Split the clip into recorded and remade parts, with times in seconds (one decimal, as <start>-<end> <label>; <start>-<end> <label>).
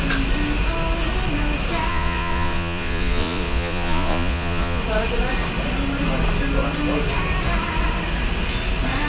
0.0-1.9 recorded; 1.9-4.8 remade; 4.8-9.1 recorded